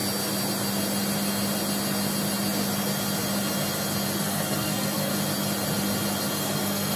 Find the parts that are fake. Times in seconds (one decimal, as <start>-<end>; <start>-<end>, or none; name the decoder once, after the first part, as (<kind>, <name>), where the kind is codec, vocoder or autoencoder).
4.2-5.1 (codec, SNAC); 6.4-7.0